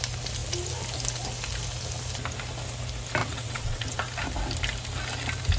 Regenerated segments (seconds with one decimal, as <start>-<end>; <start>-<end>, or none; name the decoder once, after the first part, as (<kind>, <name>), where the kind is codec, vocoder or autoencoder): 3.2-4.0 (vocoder, WaveNeXt)